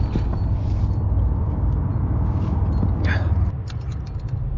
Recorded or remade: recorded